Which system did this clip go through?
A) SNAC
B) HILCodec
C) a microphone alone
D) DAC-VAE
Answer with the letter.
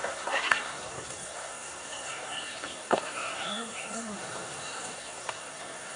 A